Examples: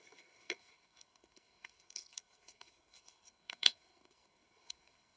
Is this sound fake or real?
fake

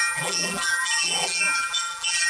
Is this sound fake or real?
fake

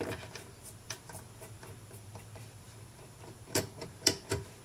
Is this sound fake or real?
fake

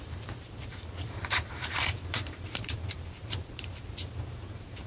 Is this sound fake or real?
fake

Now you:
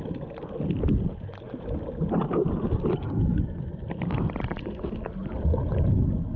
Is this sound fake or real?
real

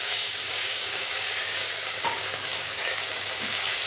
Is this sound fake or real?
fake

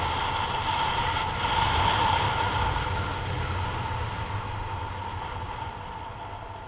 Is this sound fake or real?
real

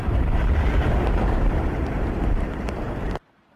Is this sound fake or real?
fake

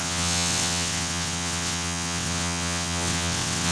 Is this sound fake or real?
fake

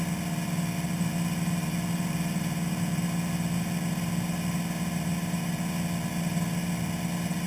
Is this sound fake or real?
real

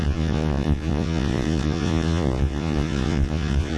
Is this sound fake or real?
fake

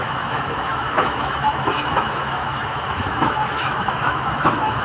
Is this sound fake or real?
fake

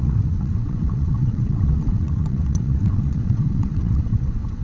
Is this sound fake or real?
fake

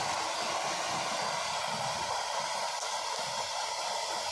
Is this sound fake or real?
real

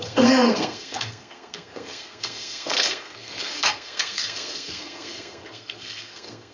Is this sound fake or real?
fake